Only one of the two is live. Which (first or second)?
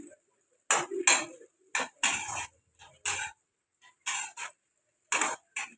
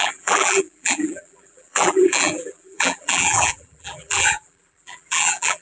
first